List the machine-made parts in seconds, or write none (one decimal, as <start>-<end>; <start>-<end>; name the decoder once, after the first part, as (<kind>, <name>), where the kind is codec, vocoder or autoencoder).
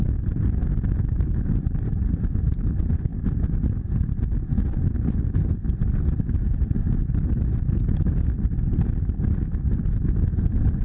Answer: none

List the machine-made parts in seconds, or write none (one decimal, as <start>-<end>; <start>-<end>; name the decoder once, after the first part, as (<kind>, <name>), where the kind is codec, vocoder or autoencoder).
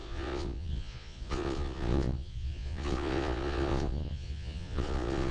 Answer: 0.0-5.3 (vocoder, Vocos)